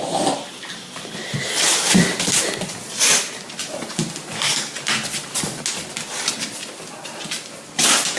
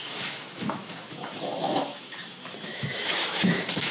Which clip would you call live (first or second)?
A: first